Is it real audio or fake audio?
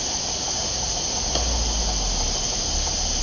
real